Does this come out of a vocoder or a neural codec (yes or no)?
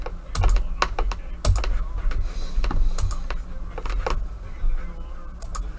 no